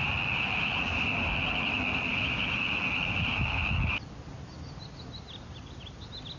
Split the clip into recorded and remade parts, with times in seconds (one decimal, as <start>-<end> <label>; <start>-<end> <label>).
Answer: 0.0-6.4 recorded